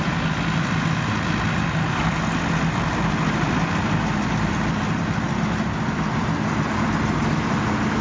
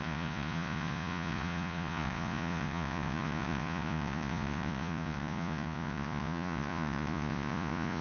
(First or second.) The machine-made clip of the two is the second